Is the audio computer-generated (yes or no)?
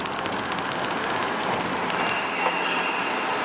no